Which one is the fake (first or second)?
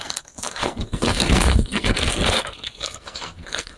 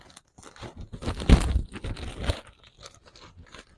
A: first